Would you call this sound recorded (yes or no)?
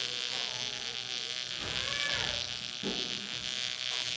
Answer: yes